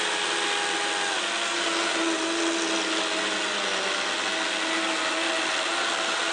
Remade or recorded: recorded